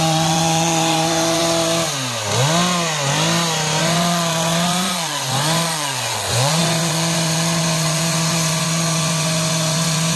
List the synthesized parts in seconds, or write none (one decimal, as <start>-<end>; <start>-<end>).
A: 0.0-1.4; 3.8-10.2